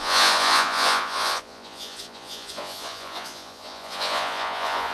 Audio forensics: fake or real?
fake